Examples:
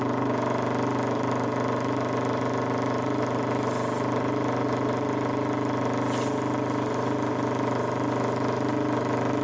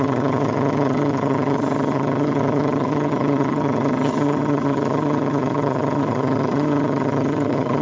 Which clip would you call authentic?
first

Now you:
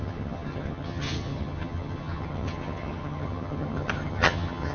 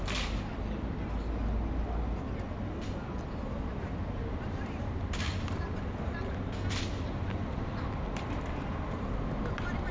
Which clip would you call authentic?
second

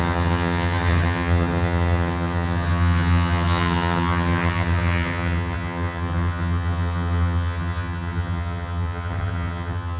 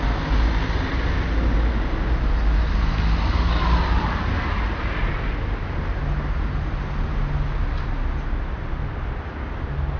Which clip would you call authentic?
second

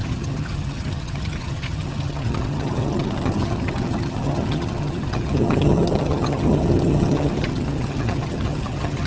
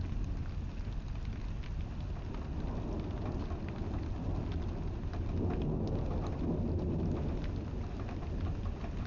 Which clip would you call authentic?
second